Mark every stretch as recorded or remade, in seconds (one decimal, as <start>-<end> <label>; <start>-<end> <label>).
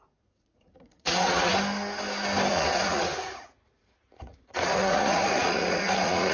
0.0-1.5 remade; 1.5-2.5 recorded; 2.5-6.3 remade